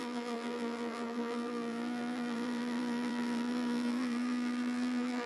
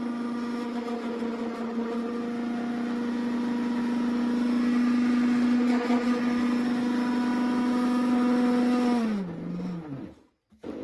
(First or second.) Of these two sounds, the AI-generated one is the first